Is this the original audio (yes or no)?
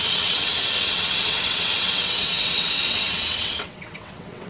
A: no